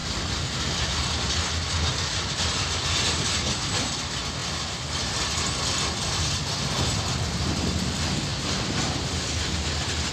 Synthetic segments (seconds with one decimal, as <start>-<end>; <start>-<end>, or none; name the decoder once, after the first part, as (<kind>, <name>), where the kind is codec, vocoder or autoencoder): none